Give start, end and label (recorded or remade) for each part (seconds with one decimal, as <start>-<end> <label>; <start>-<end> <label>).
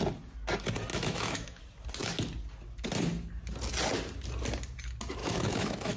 0.0-0.9 recorded; 0.9-1.6 remade; 1.6-5.2 recorded; 5.2-6.0 remade